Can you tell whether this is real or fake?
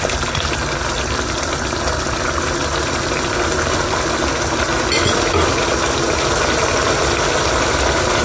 real